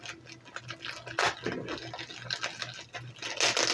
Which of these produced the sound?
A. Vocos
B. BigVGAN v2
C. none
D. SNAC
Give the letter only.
C